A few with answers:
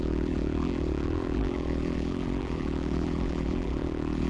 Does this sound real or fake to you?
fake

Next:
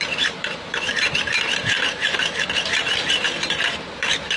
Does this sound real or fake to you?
fake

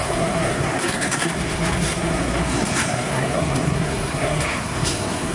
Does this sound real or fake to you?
fake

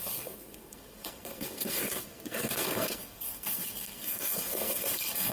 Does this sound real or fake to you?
fake